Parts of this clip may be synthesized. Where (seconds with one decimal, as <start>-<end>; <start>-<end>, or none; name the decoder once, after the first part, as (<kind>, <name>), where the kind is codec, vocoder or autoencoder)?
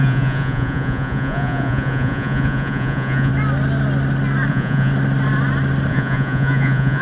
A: 0.0-3.3 (vocoder, Vocos); 4.5-4.9; 5.9-7.0